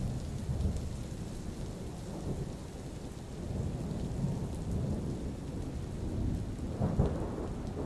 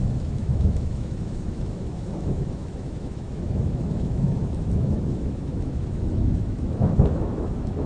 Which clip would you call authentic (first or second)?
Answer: first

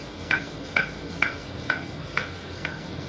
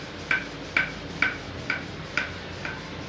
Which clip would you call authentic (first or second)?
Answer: second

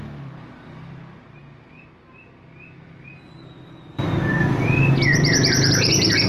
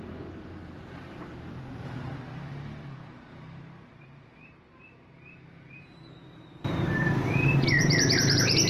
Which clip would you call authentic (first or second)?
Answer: first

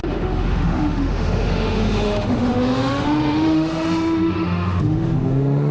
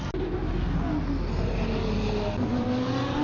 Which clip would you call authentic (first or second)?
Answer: second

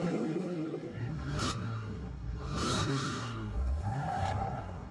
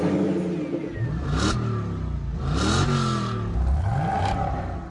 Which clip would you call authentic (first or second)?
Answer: second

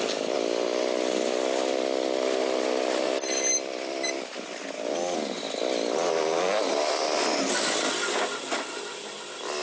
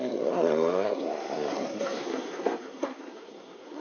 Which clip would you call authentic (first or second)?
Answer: first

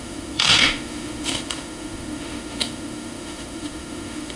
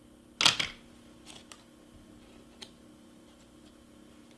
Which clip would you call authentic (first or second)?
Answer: second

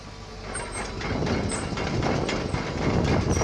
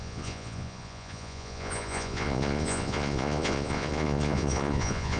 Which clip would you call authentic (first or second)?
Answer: first